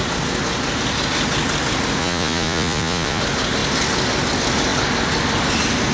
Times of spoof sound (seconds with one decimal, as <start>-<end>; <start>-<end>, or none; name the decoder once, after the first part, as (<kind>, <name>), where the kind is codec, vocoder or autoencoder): 2.0-3.2 (vocoder, Vocos)